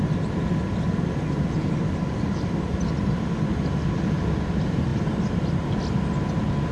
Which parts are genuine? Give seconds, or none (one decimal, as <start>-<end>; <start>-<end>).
0.0-6.7

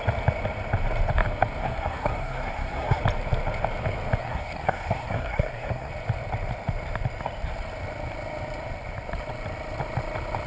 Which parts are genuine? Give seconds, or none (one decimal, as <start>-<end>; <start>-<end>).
0.0-1.6; 3.0-4.2; 5.9-10.5

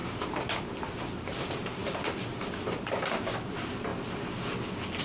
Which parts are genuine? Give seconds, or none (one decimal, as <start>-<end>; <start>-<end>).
3.9-5.0

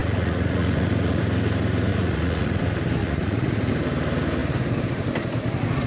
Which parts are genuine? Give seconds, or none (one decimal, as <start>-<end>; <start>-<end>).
1.2-1.9; 2.6-3.0; 3.7-5.9

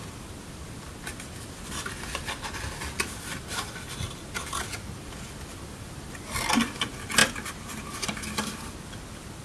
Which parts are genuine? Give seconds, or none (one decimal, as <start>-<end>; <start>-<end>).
0.0-9.4

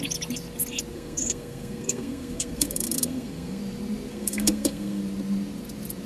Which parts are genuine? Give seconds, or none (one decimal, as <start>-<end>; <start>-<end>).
0.0-0.9; 3.6-4.1; 5.0-6.1

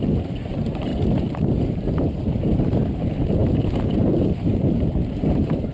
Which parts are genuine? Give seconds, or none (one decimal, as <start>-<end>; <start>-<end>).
0.9-2.1

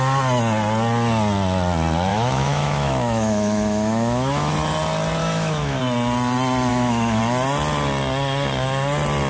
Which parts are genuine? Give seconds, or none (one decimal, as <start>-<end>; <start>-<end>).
0.0-2.1; 4.5-5.2; 5.8-6.7; 7.2-9.3